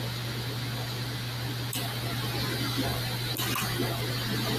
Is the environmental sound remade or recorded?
recorded